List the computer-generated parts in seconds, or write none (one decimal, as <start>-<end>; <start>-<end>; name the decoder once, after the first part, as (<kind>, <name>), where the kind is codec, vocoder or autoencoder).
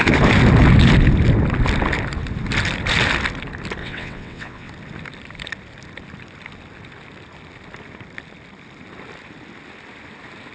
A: 3.8-4.7 (vocoder, WaveNeXt)